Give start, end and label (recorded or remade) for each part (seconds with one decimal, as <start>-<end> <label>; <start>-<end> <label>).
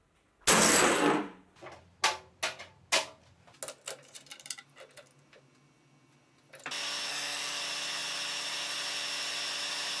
0.0-7.1 recorded; 7.1-7.6 remade; 7.6-10.0 recorded